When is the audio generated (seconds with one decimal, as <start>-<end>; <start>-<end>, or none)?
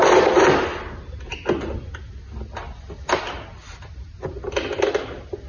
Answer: none